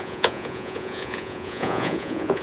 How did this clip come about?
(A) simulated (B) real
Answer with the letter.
A